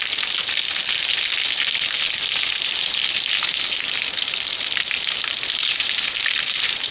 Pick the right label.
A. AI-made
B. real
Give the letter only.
B